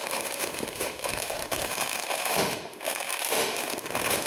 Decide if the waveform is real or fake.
fake